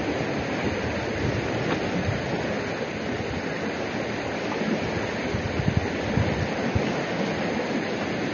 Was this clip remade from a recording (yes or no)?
no